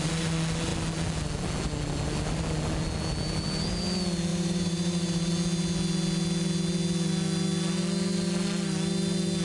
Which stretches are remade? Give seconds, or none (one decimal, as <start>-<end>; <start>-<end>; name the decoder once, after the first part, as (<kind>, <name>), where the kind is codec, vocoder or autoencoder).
4.3-5.3 (vocoder, BigVGAN v2)